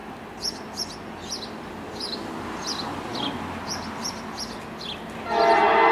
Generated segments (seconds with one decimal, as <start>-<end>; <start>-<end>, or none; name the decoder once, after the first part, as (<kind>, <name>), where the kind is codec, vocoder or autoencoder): none